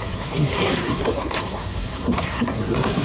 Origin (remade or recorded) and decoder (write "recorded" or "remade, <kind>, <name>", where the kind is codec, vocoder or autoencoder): remade, codec, SNAC